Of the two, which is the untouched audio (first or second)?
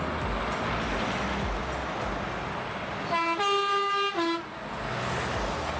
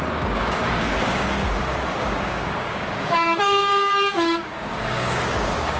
first